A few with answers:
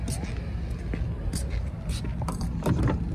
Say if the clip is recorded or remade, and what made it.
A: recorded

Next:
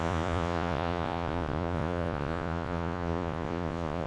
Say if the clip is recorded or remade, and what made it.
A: remade, vocoder, Vocos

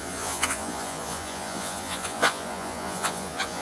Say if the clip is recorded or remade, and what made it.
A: remade, vocoder, Vocos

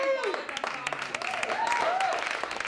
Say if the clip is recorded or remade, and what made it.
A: recorded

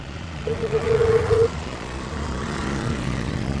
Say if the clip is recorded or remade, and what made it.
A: remade, vocoder, Vocos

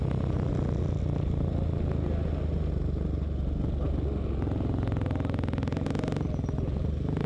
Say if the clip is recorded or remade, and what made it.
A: recorded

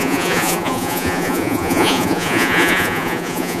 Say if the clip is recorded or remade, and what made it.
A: remade, vocoder, Vocos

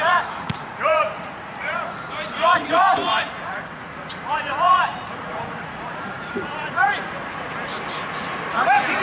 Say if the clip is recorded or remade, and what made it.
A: remade, vocoder, Vocos